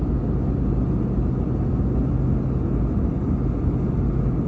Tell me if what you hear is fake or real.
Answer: real